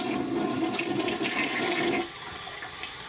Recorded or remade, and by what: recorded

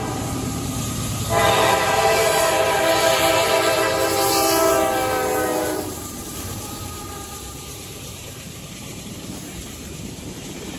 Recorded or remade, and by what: remade, vocoder, BigVGAN v2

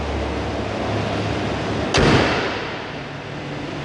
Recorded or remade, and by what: recorded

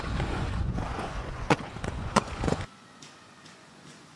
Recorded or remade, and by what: remade, vocoder, Vocos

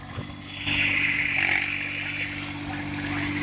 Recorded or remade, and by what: recorded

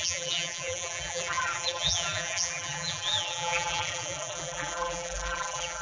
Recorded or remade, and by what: remade, vocoder, BigVGAN v2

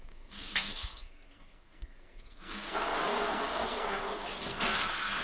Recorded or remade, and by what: remade, codec, SNAC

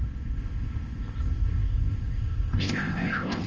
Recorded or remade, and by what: remade, codec, ZipCodec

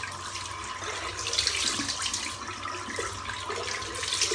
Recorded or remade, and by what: recorded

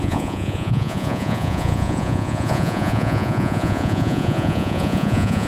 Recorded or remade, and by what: remade, vocoder, Vocos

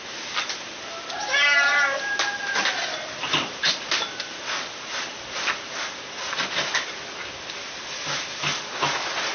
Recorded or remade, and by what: recorded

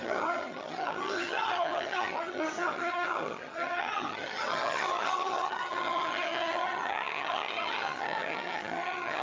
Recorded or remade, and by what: remade, vocoder, HiFi-GAN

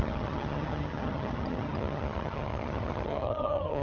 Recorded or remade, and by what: remade, vocoder, HiFi-GAN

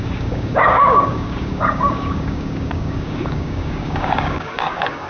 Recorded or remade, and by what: remade, codec, DAC